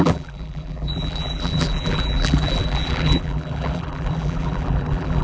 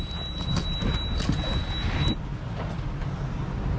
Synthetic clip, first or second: first